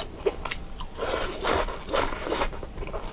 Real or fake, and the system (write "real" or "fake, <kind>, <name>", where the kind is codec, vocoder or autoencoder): real